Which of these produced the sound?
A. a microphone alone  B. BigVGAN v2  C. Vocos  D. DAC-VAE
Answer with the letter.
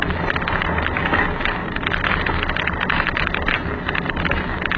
A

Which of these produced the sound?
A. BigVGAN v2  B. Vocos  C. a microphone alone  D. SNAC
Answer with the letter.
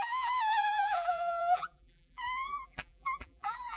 A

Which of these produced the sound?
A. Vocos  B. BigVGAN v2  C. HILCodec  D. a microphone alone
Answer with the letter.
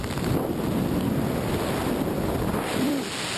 D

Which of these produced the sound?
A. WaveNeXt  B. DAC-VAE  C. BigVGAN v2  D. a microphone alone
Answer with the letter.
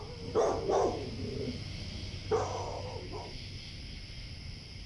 D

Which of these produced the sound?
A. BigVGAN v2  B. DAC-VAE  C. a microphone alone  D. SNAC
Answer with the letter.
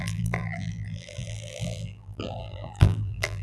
A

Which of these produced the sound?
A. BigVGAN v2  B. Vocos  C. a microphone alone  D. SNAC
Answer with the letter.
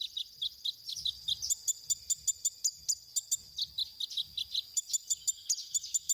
C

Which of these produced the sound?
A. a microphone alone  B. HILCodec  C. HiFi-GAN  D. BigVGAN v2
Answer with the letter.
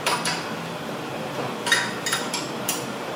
D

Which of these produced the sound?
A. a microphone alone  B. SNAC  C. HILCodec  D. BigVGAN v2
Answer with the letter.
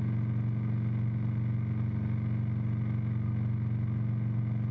A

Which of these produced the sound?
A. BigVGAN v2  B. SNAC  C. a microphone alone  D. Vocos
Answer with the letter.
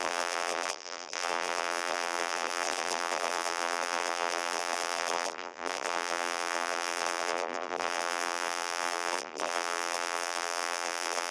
A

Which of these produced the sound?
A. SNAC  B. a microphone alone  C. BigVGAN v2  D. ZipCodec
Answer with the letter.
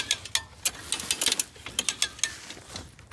B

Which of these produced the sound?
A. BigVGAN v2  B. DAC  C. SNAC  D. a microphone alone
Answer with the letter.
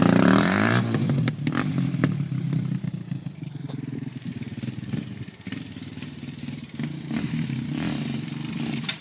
A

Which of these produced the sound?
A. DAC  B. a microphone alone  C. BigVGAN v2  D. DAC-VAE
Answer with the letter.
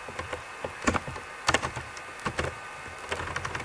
B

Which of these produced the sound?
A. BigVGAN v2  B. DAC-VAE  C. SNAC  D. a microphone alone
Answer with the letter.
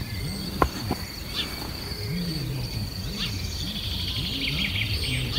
D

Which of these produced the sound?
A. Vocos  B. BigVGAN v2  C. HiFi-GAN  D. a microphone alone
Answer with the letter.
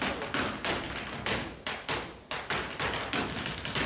D